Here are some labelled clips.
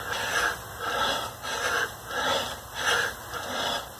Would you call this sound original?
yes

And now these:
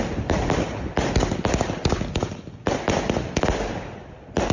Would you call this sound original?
yes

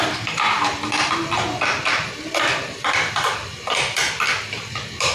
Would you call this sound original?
no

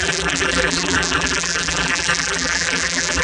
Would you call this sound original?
no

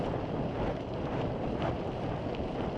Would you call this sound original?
yes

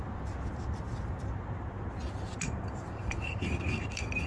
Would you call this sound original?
yes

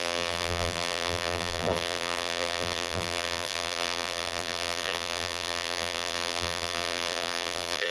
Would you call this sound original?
no